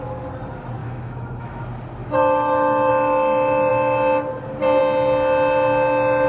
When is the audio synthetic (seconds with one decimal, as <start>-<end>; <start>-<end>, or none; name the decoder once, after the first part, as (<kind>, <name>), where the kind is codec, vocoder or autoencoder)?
0.8-1.6 (autoencoder, DAC-VAE); 2.0-2.9